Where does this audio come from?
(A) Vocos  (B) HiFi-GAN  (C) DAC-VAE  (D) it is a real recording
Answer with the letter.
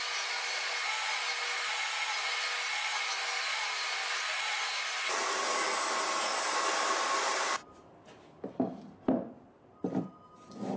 D